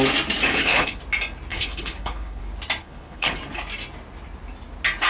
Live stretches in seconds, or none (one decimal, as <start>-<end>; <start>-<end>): 0.0-0.5; 1.0-1.5; 2.4-2.8; 3.4-5.1